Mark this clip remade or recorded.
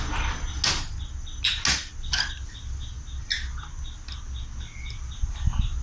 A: recorded